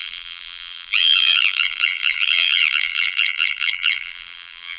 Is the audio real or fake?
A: fake